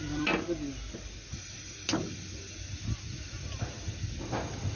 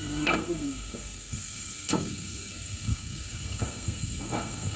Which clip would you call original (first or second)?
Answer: first